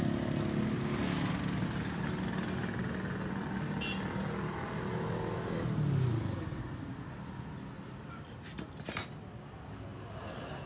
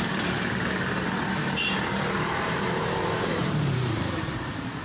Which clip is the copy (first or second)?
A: second